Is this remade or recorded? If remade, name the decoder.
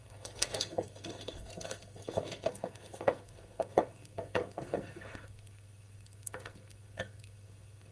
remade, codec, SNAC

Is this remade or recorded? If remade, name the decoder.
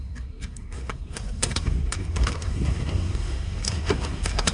remade, codec, SNAC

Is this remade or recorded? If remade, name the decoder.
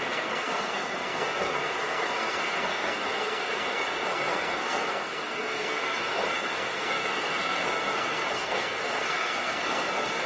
remade, codec, SNAC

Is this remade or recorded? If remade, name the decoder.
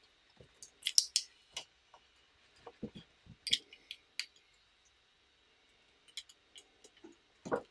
recorded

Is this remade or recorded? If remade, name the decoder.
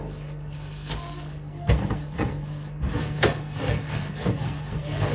remade, codec, SNAC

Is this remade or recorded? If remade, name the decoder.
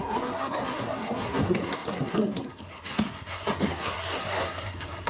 remade, codec, SNAC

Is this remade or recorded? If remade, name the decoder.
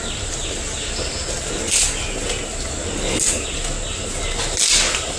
recorded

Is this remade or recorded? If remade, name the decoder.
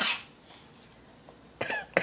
recorded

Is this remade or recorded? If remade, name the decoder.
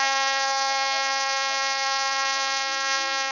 remade, codec, SNAC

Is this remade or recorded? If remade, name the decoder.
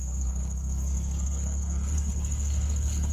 remade, codec, SNAC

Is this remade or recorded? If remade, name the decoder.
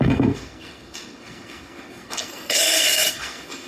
remade, codec, SNAC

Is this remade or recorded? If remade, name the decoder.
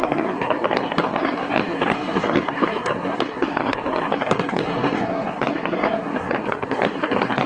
remade, codec, SNAC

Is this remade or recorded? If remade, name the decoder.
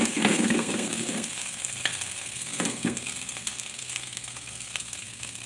remade, codec, SNAC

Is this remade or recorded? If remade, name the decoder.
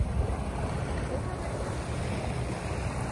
recorded